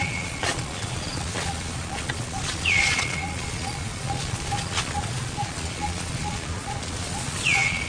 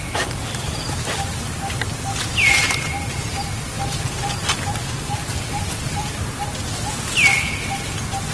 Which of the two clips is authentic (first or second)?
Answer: second